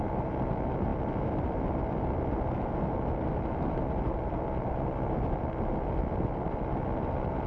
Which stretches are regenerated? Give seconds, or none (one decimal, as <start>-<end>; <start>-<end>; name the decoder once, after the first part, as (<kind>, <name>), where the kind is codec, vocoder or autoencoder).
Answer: none